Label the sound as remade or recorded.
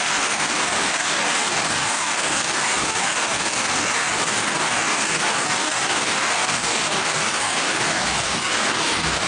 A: remade